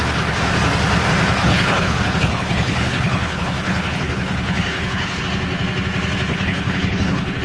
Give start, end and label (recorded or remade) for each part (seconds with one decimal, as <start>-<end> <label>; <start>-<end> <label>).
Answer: 0.0-1.4 recorded; 1.4-5.2 remade; 5.2-6.3 recorded; 6.3-7.4 remade